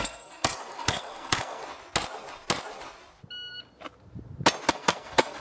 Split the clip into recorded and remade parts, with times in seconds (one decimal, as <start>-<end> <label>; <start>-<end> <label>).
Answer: 0.0-1.6 remade; 1.6-4.7 recorded; 4.7-5.4 remade